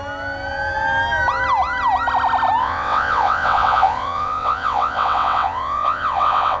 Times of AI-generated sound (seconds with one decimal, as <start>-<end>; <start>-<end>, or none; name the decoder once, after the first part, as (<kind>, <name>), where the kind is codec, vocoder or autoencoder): 2.6-6.6 (vocoder, WaveNeXt)